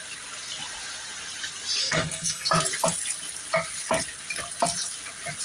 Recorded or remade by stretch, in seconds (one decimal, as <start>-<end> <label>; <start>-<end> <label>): 0.0-1.8 recorded; 1.8-2.5 remade; 2.5-5.4 recorded